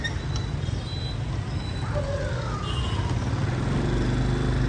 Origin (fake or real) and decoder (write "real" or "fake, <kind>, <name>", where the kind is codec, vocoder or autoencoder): real